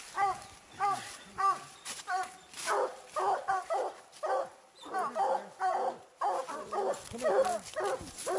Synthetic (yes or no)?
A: no